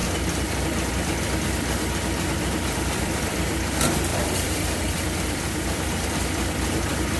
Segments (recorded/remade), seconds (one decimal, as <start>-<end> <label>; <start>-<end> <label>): 0.0-0.9 recorded; 0.9-7.2 remade